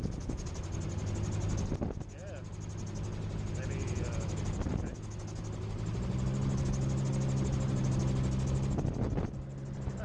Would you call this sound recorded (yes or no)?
yes